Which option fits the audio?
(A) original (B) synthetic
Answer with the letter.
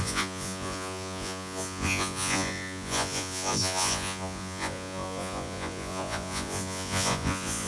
B